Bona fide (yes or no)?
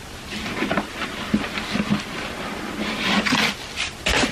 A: yes